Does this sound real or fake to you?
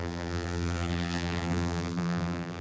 fake